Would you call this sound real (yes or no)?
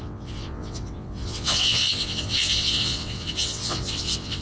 no